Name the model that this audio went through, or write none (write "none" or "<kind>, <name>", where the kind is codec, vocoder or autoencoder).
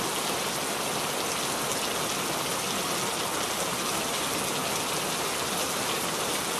none